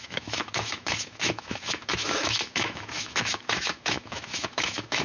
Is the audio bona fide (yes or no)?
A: no